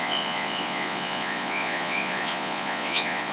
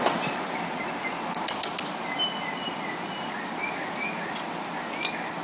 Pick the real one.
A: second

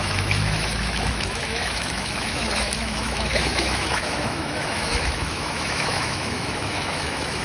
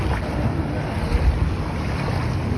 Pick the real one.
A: second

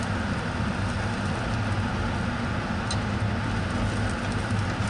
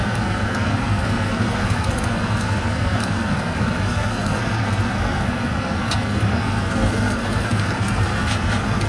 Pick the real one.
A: first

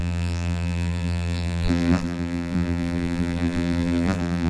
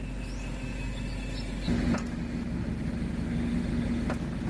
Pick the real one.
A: second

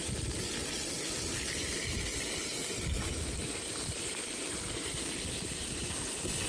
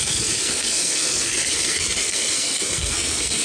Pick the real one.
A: first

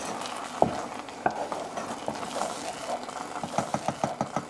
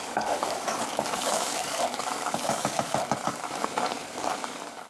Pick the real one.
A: first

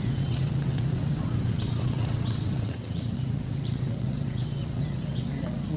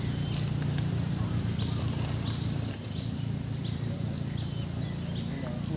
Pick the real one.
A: second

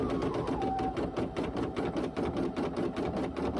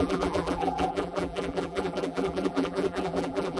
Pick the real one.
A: first